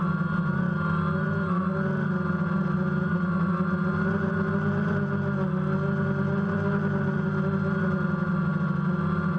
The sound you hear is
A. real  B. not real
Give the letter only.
A